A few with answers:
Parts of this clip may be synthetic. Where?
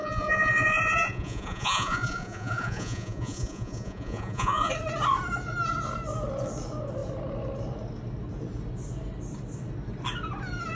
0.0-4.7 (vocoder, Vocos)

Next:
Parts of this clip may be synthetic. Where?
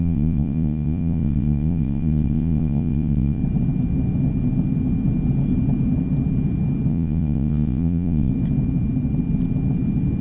0.0-3.4 (vocoder, Vocos); 6.9-8.3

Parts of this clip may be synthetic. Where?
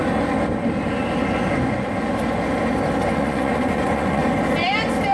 3.1-4.2 (vocoder, Vocos)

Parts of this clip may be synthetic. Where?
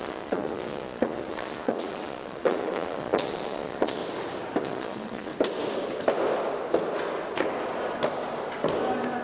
0.0-4.0 (vocoder, Vocos); 4.6-5.3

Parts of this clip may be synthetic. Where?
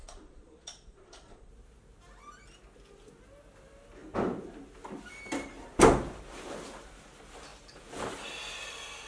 0.0-1.5 (vocoder, Vocos)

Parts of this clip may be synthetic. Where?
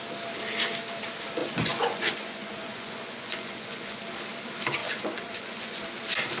1.4-4.0 (vocoder, Vocos); 4.8-5.8